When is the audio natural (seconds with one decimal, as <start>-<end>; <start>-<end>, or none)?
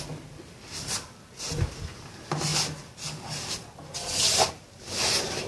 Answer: 0.0-5.5